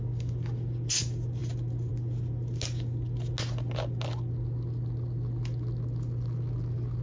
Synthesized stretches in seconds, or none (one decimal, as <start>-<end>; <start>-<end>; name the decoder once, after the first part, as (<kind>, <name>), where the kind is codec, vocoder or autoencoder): none